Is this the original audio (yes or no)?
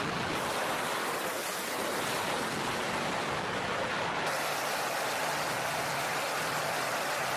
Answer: yes